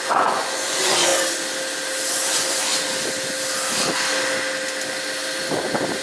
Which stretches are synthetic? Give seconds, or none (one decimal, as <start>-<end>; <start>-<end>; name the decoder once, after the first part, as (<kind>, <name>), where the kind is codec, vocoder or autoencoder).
0.0-1.1 (vocoder, Vocos); 2.1-2.7